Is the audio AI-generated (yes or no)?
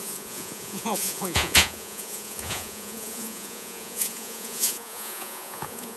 yes